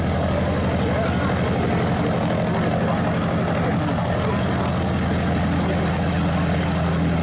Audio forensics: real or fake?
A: real